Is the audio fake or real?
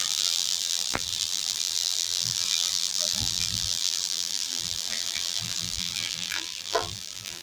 fake